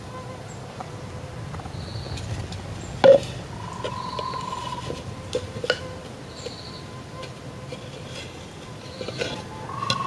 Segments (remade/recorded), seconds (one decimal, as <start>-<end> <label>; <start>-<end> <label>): 0.0-10.1 recorded